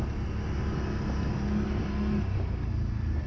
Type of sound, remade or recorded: recorded